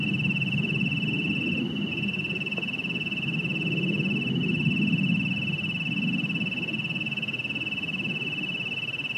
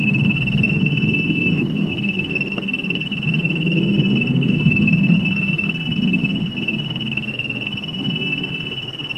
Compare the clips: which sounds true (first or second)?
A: first